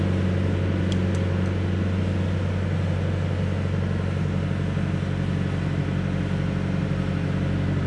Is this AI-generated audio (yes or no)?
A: no